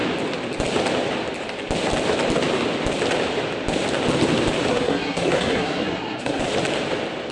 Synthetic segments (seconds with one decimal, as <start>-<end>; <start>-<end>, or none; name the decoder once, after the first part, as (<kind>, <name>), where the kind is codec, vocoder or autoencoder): 4.7-6.4 (codec, SNAC)